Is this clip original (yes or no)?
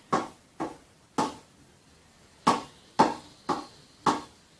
yes